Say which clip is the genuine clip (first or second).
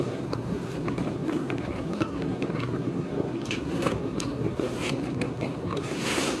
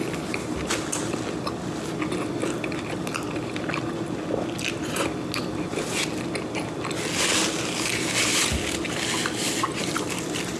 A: second